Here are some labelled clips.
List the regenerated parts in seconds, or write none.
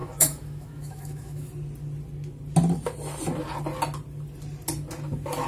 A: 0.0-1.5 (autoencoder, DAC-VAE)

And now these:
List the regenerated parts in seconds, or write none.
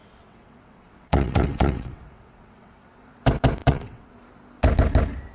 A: 0.0-3.2 (vocoder, WaveNeXt); 3.6-4.1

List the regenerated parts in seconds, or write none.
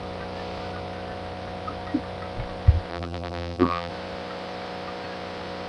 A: 2.9-3.9 (vocoder, BigVGAN v2)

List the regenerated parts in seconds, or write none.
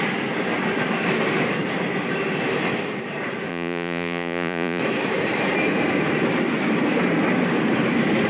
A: 3.5-4.8 (vocoder, Vocos)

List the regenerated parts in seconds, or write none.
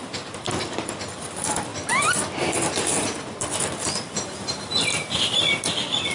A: none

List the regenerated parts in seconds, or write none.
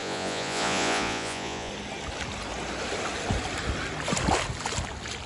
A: 0.0-1.7 (vocoder, Vocos)